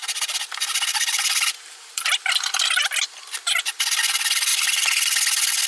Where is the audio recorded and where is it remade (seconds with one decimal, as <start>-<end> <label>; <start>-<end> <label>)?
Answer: 0.0-3.0 remade; 3.0-5.7 recorded